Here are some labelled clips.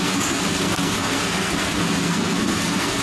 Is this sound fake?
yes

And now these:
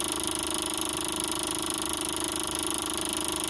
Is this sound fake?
no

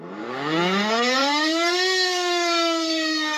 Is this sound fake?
yes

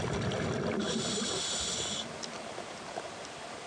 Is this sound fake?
no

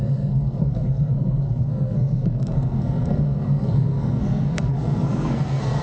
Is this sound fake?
yes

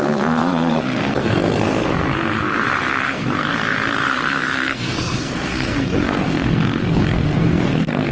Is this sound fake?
yes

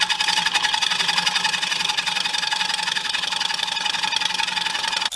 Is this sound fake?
no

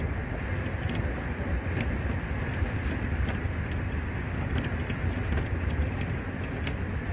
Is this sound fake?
no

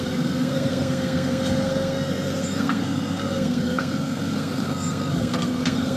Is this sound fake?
yes